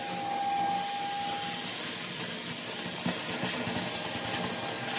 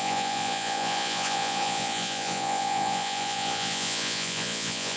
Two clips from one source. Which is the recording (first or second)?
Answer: first